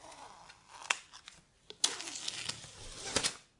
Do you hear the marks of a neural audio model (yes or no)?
yes